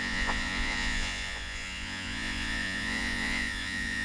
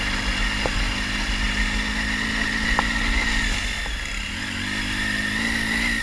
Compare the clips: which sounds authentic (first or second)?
second